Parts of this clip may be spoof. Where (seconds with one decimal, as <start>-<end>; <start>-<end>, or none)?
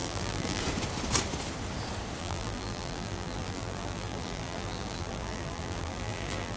0.0-0.6; 2.2-6.6